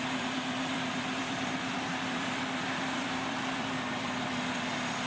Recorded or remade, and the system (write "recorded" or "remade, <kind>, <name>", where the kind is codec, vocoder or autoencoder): remade, vocoder, BigVGAN v2